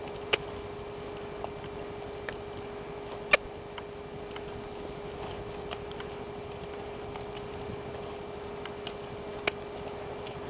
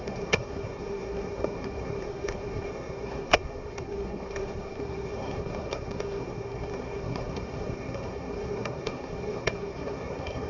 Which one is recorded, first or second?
first